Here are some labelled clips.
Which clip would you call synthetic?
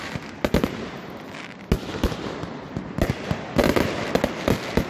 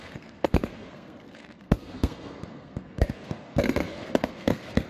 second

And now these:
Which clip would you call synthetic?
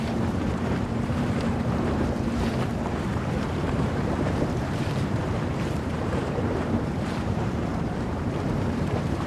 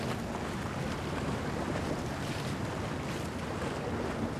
first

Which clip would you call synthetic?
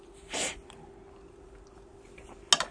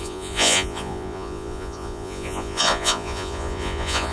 second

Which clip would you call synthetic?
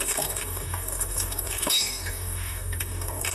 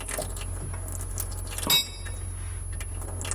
first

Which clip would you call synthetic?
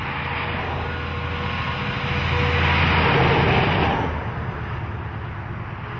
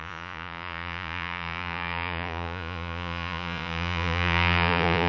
second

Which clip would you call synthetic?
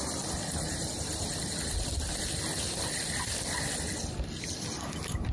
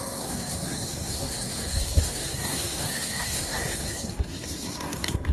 second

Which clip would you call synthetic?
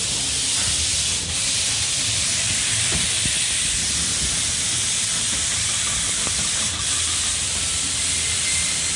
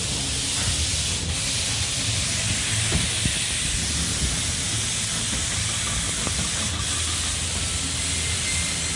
first